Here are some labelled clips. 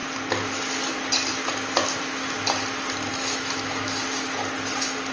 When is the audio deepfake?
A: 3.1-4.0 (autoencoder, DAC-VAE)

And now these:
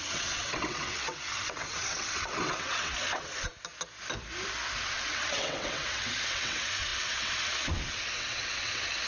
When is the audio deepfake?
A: 0.0-3.5 (vocoder, WaveNeXt); 4.8-9.1

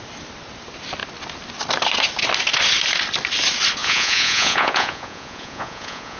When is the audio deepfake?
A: 3.8-6.2 (vocoder, Vocos)

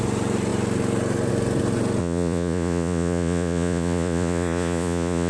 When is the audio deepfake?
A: 2.0-5.3 (vocoder, Vocos)

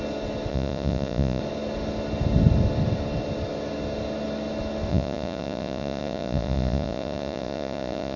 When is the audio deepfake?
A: 0.5-1.4 (vocoder, Vocos); 4.9-8.2

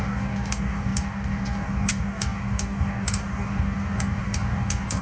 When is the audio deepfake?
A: 0.0-5.0 (codec, DAC)